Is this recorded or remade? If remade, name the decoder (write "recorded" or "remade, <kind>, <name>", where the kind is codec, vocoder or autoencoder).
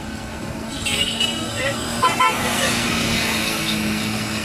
remade, codec, SNAC